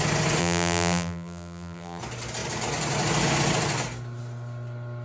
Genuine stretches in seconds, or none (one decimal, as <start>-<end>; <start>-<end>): 0.0-0.4; 2.0-5.0